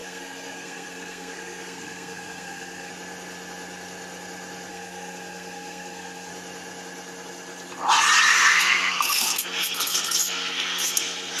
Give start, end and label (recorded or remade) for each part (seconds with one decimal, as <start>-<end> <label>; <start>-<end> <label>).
0.0-2.9 remade; 2.9-4.7 recorded; 4.7-6.3 remade; 6.3-8.3 recorded; 8.3-11.4 remade